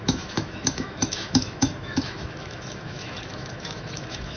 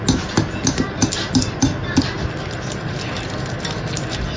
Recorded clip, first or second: second